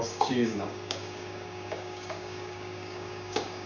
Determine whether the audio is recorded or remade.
remade